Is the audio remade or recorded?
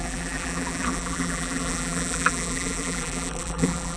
remade